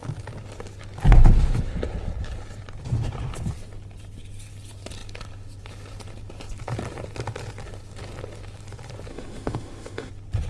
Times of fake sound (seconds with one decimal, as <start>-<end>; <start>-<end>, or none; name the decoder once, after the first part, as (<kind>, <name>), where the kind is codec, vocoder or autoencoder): 9.1-10.1 (autoencoder, DAC-VAE)